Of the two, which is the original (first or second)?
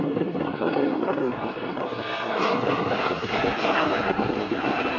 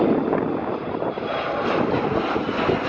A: second